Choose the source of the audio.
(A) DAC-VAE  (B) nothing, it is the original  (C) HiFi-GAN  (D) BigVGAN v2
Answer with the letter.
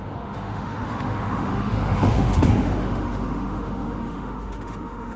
A